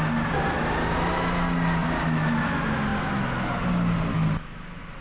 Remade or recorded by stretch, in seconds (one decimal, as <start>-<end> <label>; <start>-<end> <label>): 0.0-1.8 recorded; 1.8-2.4 remade; 2.4-5.0 recorded